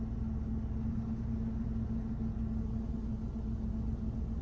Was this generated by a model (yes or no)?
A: no